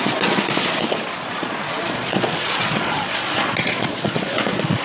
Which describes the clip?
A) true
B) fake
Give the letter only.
B